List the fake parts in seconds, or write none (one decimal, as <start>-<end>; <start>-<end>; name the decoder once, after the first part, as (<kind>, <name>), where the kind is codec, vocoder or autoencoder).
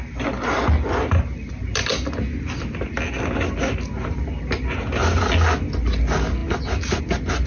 none